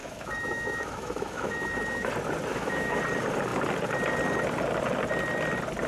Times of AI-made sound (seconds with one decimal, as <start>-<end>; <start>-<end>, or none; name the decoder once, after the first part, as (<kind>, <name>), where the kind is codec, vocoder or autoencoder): 0.0-2.1 (autoencoder, DAC-VAE); 2.5-3.0